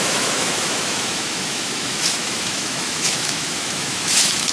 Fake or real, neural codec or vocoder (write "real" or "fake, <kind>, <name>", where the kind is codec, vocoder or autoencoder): fake, autoencoder, DAC-VAE